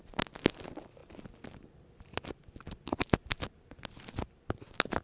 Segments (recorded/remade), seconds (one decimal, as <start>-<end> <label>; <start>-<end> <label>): 0.0-5.0 recorded